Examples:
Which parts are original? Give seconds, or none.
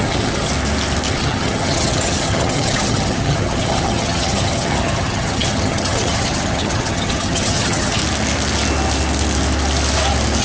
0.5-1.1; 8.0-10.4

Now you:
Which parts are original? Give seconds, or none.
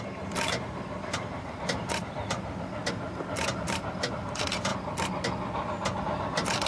2.8-3.3; 4.7-6.0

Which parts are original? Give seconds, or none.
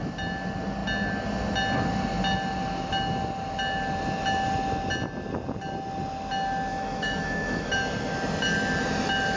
0.0-6.7; 7.7-9.4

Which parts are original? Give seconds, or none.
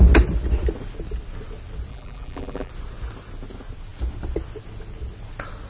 0.0-1.9; 2.7-5.7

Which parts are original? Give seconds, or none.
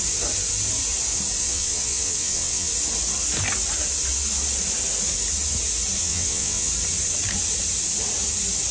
0.0-1.4; 2.7-6.0; 6.7-8.7